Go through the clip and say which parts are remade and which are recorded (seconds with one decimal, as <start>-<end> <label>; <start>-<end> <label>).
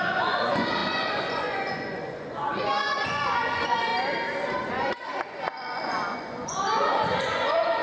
0.0-3.9 remade; 3.9-4.7 recorded; 4.7-7.8 remade